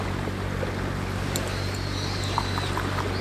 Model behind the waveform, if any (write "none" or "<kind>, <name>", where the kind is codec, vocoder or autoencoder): none